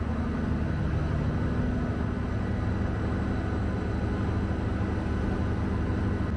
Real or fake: real